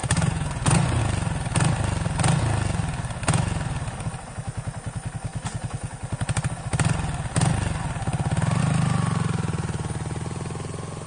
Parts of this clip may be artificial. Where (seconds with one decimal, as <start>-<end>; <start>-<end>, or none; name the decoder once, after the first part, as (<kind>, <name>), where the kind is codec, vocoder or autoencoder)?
0.0-1.0 (vocoder, Vocos)